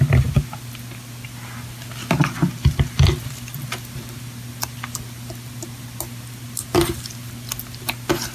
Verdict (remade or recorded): recorded